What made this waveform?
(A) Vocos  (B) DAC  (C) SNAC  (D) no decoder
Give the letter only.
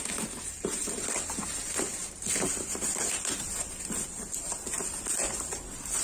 D